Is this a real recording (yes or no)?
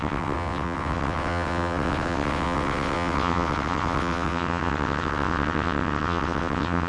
no